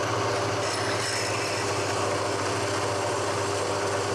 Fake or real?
real